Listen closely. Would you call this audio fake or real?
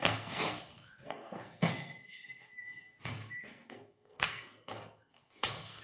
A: fake